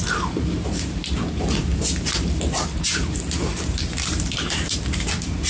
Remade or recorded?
remade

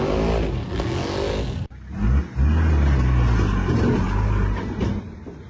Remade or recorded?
recorded